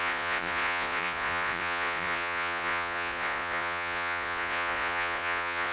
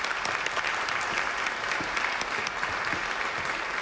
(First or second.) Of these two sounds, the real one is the second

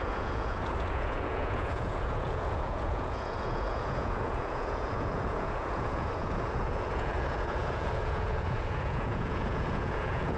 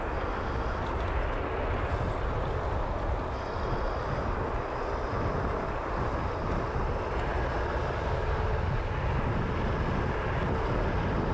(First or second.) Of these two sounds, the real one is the second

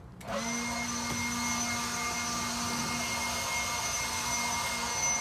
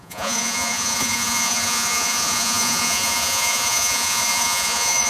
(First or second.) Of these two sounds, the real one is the first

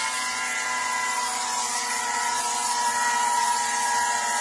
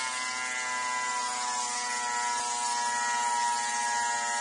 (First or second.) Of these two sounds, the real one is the second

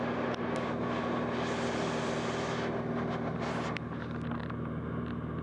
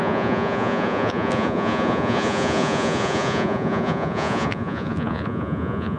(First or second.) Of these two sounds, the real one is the first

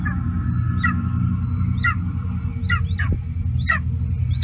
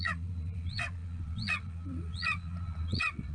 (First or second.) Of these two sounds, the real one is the first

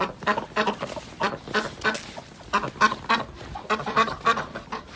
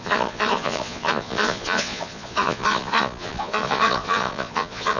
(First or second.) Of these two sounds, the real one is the first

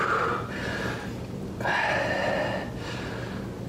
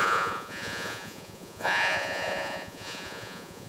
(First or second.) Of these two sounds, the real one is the first